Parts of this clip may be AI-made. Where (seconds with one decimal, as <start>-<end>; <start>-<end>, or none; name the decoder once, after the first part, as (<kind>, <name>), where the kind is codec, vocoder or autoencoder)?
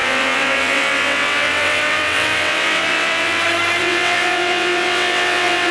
0.0-3.4 (vocoder, WaveNeXt); 3.8-5.7